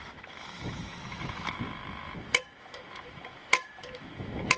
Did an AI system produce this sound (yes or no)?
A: yes